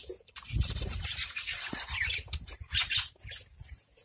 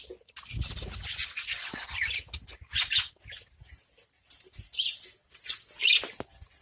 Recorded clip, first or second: second